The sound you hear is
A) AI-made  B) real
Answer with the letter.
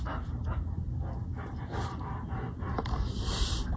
B